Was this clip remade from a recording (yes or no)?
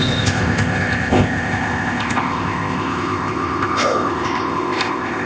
yes